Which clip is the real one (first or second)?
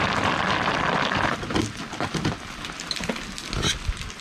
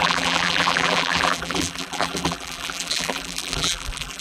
first